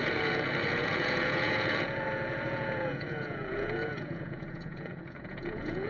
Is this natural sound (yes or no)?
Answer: no